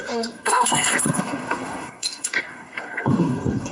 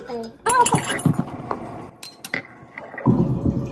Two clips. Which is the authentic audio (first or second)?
second